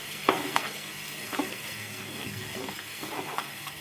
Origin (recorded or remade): remade